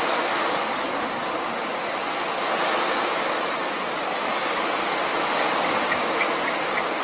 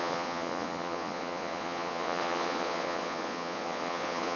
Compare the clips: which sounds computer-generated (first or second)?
second